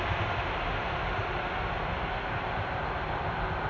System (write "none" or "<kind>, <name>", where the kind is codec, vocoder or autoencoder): none